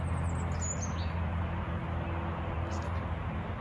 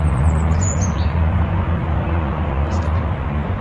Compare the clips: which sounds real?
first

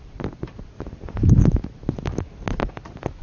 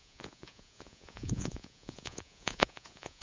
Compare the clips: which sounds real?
first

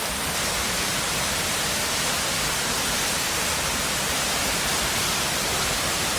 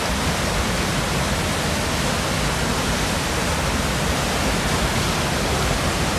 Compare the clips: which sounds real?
second